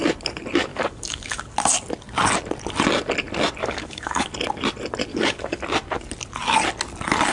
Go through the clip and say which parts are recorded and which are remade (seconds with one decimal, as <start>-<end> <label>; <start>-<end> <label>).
0.0-0.7 recorded; 0.7-1.4 remade; 1.4-3.6 recorded; 3.6-4.3 remade; 4.3-5.1 recorded; 5.1-5.6 remade; 5.6-7.3 recorded